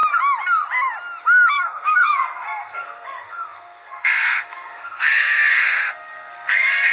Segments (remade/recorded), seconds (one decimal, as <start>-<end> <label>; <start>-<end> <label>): 0.0-1.5 recorded; 1.5-6.9 remade